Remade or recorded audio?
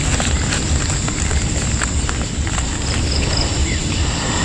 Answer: recorded